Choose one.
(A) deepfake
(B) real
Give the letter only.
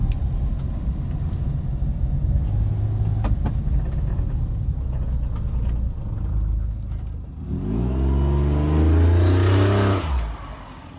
B